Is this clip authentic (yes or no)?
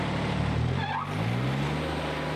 yes